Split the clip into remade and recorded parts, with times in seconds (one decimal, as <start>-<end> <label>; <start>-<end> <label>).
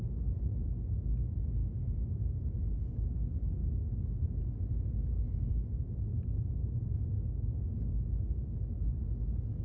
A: 0.0-3.6 recorded; 3.6-4.4 remade; 4.4-9.6 recorded